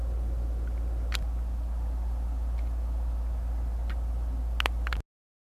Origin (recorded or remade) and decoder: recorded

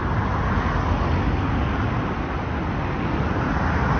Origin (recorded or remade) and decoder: recorded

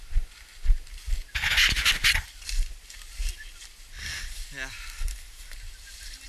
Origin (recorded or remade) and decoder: recorded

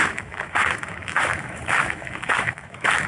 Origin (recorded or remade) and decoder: remade, autoencoder, DAC-VAE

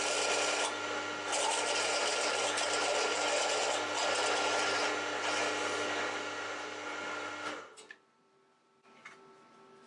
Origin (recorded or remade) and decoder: recorded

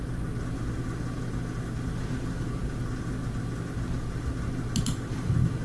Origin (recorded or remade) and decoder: recorded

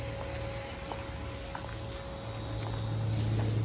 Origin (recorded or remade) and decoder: recorded